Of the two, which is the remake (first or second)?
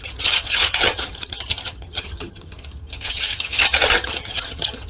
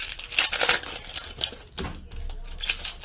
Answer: first